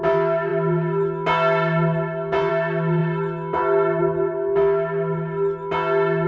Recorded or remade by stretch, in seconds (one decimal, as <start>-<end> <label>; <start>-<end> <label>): 0.0-6.3 recorded